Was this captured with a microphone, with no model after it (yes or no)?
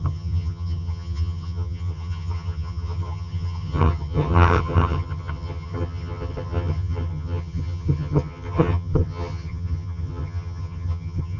no